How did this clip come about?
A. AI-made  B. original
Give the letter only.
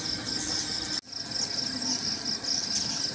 B